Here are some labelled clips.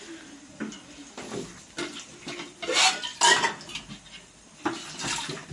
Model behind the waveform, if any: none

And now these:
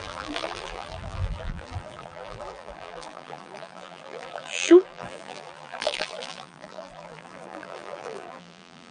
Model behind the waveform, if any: vocoder, BigVGAN v2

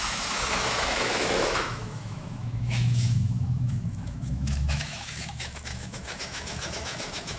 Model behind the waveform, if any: autoencoder, DAC-VAE